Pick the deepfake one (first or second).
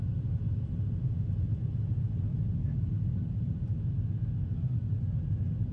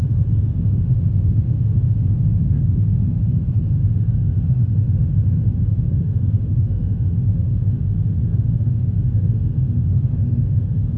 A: second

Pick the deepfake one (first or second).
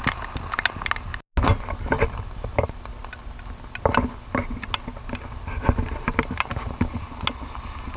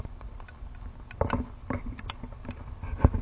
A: second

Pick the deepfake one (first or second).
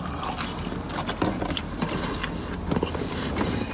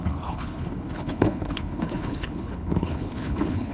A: second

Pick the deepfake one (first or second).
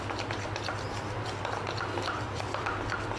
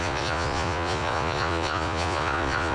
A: second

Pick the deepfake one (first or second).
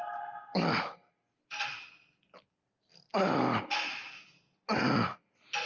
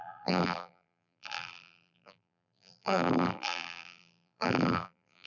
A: second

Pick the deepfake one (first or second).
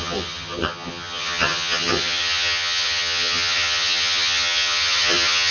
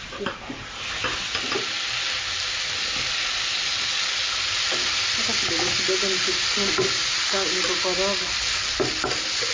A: first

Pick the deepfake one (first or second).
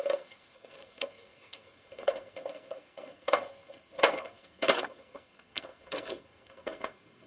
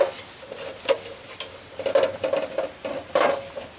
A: first